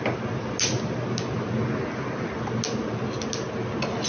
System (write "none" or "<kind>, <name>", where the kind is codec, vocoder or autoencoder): none